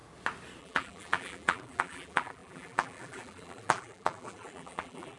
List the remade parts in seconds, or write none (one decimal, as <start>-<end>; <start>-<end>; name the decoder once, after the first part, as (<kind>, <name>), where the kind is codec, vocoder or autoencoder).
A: 0.6-5.2 (vocoder, BigVGAN v2)